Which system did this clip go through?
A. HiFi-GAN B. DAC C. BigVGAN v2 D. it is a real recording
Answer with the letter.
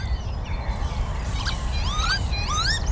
C